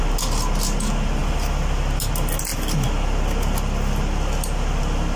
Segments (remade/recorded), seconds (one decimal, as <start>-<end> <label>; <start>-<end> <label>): 0.0-5.2 recorded